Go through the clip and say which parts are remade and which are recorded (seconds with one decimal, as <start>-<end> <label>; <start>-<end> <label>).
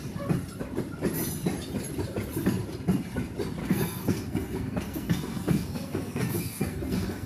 0.0-3.6 recorded; 3.6-7.3 remade